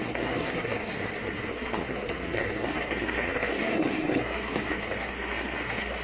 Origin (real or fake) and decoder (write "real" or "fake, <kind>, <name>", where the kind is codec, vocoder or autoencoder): fake, codec, SNAC